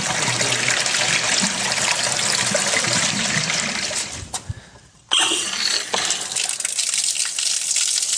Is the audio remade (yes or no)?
no